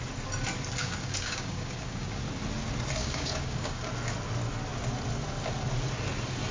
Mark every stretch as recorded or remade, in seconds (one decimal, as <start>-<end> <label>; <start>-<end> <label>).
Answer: 0.0-0.8 recorded; 0.8-2.2 remade; 2.2-3.0 recorded; 3.0-3.9 remade; 3.9-6.5 recorded